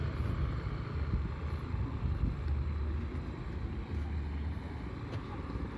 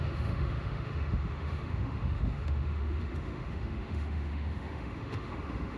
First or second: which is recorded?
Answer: first